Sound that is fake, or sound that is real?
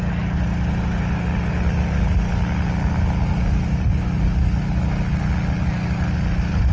real